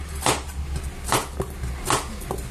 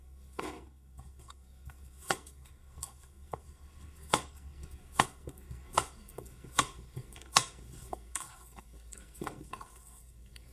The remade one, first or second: second